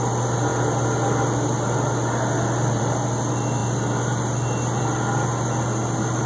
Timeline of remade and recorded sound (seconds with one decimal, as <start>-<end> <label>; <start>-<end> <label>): 0.0-6.3 recorded